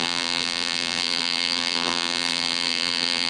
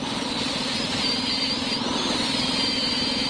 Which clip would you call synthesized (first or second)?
first